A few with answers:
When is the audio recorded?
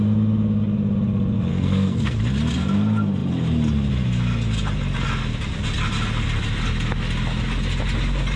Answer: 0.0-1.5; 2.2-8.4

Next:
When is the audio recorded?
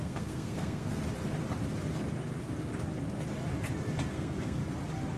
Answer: 1.0-4.1; 4.6-5.2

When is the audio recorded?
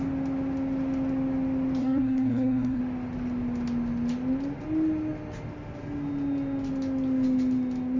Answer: 0.0-1.8; 2.8-8.0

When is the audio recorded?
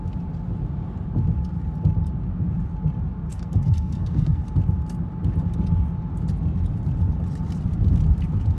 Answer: 0.0-3.3; 4.4-8.6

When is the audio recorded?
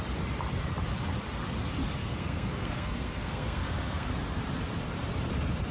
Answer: 0.0-2.0; 4.1-5.7